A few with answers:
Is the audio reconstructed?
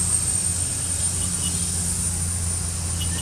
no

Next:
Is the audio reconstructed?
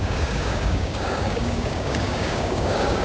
yes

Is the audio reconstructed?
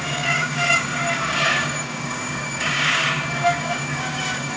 yes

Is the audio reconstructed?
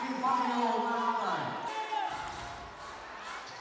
no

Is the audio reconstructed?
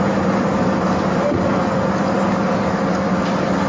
no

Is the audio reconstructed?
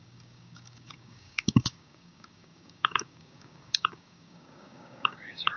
yes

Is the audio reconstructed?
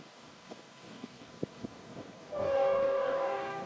yes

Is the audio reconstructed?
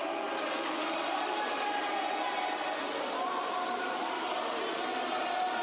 no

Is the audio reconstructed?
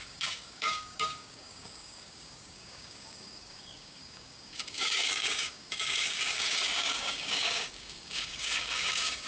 yes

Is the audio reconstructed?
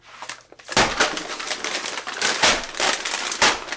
no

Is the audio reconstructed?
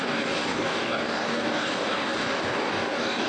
yes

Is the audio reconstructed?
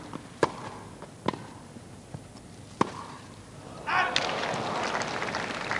no